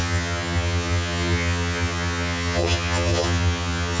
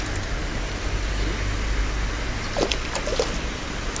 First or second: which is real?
second